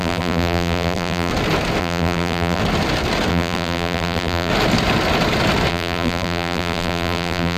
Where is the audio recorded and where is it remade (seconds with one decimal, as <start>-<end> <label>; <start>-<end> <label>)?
0.0-1.3 remade; 1.3-1.8 recorded; 1.8-2.6 remade; 2.6-3.3 recorded; 3.3-4.5 remade; 4.5-5.7 recorded; 5.7-7.6 remade